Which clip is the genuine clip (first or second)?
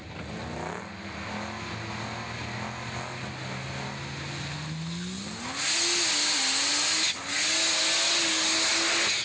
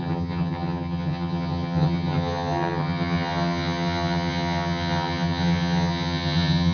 first